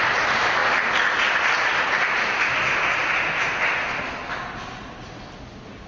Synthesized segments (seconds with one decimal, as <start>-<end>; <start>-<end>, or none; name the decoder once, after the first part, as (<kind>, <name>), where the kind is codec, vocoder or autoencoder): none